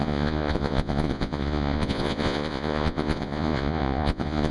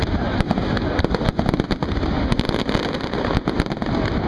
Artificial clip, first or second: first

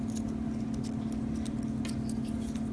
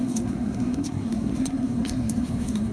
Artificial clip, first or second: second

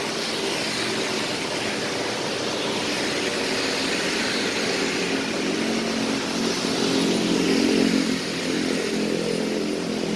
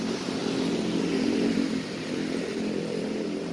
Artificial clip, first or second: second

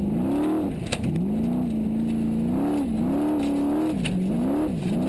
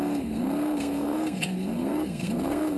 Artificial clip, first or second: second